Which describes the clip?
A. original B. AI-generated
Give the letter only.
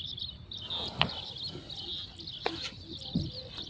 A